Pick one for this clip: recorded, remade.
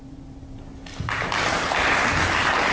recorded